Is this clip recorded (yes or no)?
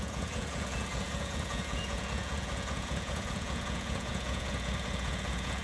no